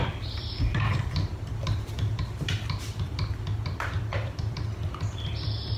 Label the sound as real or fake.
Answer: fake